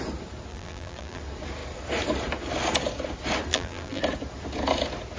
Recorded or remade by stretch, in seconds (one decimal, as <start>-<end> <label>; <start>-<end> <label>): 0.0-0.5 recorded; 0.5-1.2 remade; 1.2-3.5 recorded; 3.5-4.0 remade; 4.0-5.2 recorded